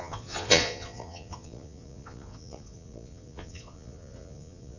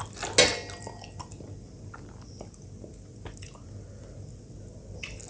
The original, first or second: second